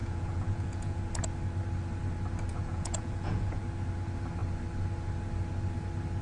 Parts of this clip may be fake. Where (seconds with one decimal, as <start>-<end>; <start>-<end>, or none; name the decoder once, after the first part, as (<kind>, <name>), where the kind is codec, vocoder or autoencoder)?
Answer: 0.0-1.0 (vocoder, Vocos); 2.5-3.6